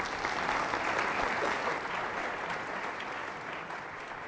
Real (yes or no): yes